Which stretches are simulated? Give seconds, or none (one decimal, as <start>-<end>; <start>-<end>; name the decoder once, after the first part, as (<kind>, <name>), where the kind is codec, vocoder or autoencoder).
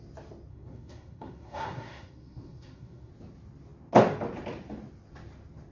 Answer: 0.5-3.1 (codec, SNAC)